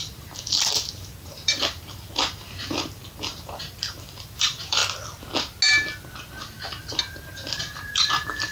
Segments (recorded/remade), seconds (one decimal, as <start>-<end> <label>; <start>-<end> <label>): 0.0-4.8 remade; 4.8-7.0 recorded; 7.0-8.5 remade